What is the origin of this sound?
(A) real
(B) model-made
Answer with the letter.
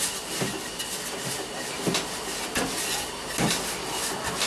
A